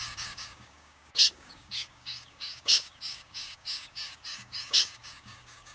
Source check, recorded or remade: remade